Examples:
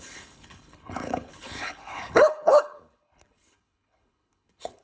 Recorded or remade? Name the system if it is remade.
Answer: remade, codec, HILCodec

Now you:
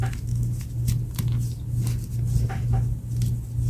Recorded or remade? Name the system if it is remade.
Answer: recorded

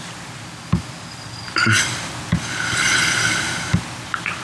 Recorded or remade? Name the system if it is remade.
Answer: recorded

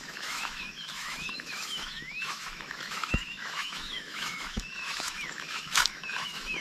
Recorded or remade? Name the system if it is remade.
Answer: remade, autoencoder, DAC-VAE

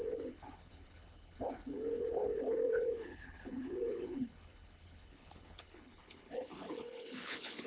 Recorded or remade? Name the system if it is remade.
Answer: remade, codec, HILCodec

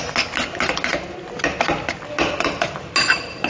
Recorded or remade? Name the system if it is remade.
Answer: recorded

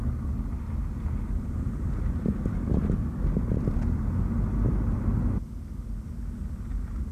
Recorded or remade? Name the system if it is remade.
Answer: recorded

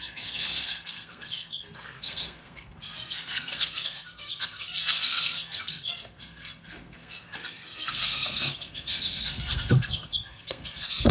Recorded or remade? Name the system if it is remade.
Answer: remade, codec, SNAC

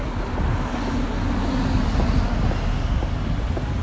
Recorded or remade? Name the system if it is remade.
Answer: recorded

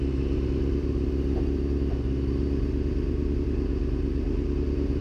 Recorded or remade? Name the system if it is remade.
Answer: recorded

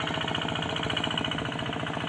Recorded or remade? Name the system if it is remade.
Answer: recorded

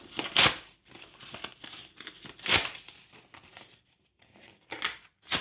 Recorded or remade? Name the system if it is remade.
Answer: recorded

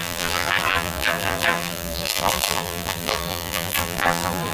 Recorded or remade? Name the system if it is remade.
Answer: remade, vocoder, BigVGAN v2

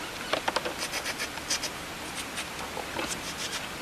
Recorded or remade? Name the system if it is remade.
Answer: recorded